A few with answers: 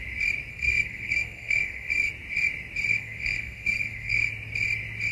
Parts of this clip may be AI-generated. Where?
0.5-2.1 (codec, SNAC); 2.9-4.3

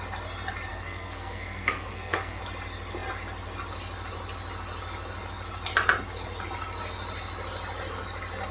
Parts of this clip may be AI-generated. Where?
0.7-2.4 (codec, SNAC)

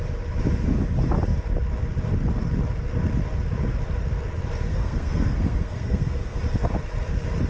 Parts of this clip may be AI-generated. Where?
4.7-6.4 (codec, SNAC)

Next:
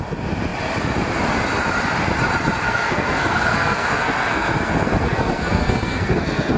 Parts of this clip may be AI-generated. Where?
2.6-6.6 (codec, SNAC)

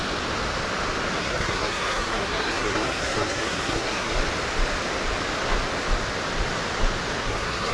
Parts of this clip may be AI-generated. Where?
1.2-4.2 (codec, SNAC); 7.2-7.7

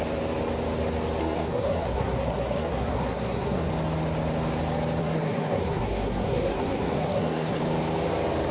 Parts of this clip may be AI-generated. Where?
1.2-3.7 (codec, SNAC); 5.0-7.6

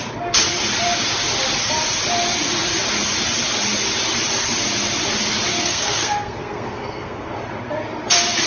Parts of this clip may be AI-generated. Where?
5.5-7.3 (codec, SNAC)